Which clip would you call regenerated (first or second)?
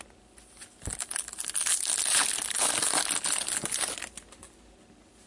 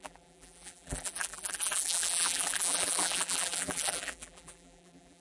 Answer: second